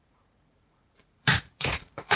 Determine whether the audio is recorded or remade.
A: remade